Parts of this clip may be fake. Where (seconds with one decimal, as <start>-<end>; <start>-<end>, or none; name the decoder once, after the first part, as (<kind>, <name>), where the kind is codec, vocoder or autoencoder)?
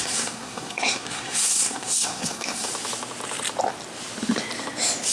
0.0-2.7 (codec, SNAC)